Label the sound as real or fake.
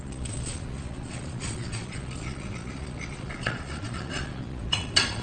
fake